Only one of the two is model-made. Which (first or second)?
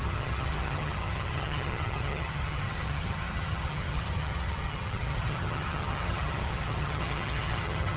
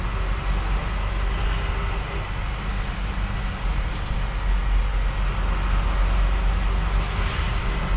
first